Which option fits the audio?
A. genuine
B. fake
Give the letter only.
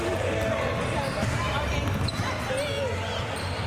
A